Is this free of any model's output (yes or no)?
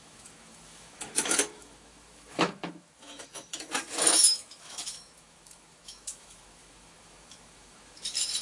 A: no